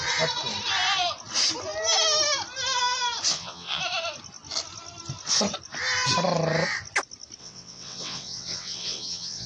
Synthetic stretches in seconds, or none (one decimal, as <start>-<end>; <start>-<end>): 3.3-3.8; 7.4-9.5